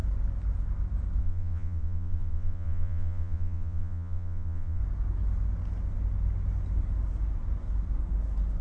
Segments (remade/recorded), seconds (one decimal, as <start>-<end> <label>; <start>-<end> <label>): 0.0-1.2 recorded; 1.2-4.8 remade; 4.8-8.6 recorded